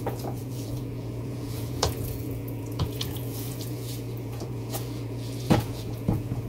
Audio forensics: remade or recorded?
remade